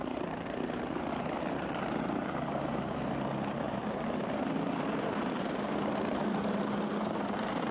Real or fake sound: fake